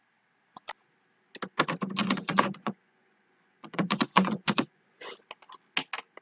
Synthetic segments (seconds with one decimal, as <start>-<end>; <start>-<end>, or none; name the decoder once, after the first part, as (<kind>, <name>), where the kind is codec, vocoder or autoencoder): 2.0-5.1 (vocoder, Vocos)